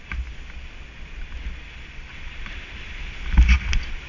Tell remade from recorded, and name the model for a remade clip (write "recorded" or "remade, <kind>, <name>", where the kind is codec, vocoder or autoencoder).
recorded